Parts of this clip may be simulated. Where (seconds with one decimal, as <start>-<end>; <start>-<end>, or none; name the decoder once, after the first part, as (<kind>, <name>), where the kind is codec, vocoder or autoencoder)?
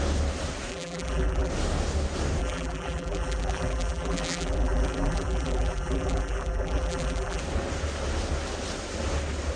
0.7-1.5 (vocoder, BigVGAN v2); 2.4-7.4